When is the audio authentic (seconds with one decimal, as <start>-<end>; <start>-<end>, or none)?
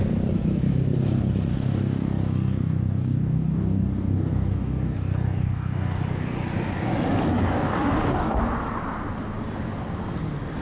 0.0-1.5; 6.0-7.4; 8.4-10.6